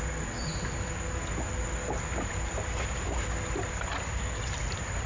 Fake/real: real